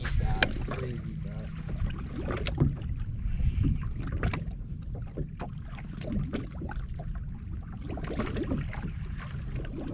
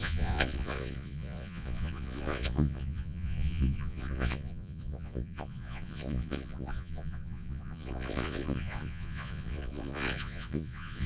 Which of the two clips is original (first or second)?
first